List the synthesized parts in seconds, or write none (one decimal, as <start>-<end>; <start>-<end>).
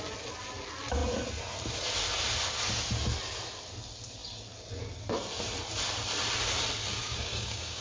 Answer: 7.0-7.8